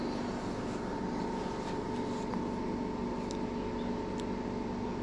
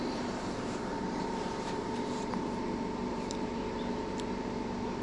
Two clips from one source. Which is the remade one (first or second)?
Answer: second